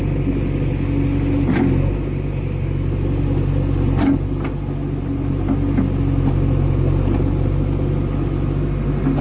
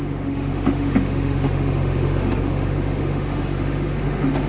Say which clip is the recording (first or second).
first